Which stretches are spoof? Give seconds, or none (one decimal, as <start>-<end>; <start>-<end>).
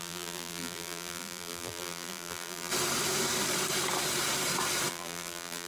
0.0-2.7; 4.9-5.7